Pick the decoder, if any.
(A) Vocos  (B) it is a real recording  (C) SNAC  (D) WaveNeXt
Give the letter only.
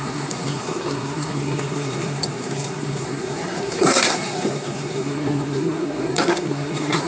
C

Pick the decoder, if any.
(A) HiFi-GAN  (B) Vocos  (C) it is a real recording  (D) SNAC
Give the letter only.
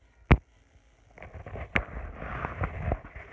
C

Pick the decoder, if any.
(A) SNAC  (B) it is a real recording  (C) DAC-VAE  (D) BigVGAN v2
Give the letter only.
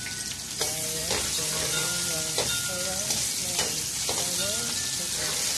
B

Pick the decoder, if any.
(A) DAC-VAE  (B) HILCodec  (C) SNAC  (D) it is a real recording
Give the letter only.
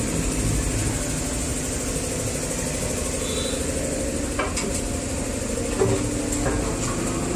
D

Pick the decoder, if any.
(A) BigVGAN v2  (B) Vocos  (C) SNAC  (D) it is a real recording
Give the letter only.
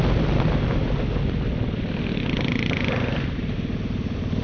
D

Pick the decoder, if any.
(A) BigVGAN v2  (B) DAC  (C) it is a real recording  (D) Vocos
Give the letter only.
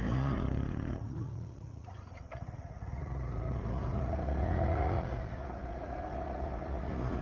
D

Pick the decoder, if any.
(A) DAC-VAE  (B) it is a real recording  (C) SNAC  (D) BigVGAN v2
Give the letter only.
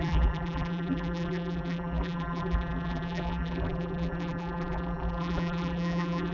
D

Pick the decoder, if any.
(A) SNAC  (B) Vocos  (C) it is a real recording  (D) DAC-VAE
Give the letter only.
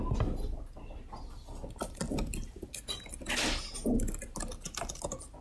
C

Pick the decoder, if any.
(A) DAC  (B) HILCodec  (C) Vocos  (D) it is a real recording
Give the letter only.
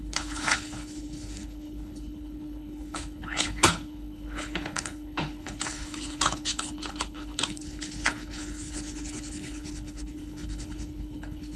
B